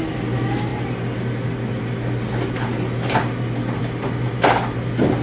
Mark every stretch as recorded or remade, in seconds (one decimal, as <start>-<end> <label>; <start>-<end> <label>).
0.0-5.2 recorded